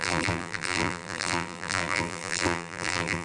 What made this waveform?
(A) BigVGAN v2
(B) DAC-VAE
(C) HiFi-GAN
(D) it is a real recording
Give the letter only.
A